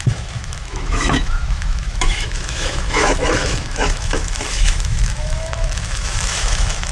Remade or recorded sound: remade